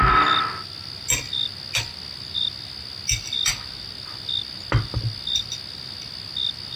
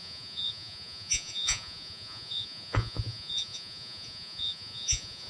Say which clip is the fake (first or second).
second